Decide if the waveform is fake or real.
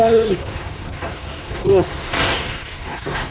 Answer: fake